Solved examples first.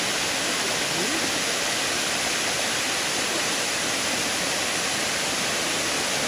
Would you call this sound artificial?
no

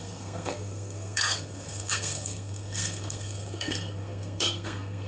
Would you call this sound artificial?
yes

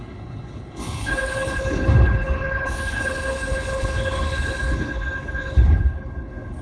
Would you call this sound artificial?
yes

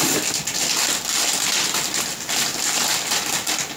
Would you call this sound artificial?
no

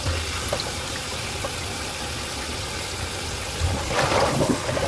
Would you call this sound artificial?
no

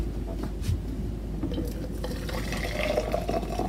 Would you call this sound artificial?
no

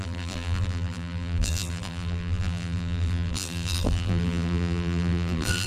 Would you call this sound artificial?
yes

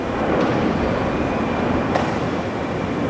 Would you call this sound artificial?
no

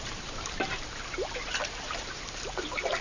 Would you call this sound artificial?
yes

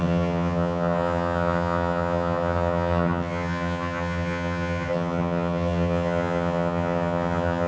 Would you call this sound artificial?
yes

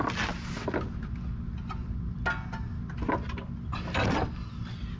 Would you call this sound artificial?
no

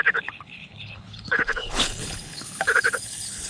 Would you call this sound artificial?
yes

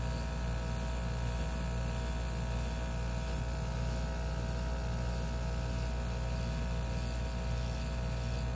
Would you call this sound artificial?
no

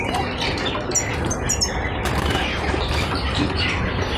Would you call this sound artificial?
no